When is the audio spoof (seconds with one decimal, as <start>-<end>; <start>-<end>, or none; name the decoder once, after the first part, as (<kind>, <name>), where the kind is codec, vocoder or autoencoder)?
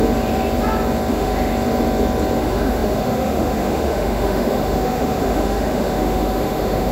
1.1-1.5 (autoencoder, DAC-VAE); 2.4-6.9